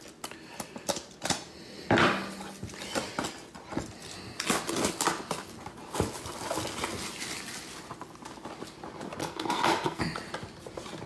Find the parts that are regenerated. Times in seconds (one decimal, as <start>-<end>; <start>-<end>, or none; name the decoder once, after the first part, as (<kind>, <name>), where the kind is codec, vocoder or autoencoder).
9.2-10.0 (codec, SNAC)